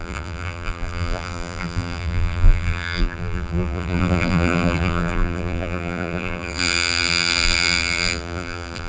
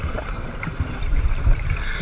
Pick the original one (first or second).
second